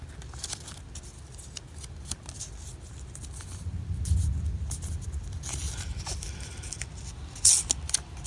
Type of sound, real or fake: real